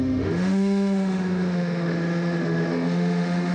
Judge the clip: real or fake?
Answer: fake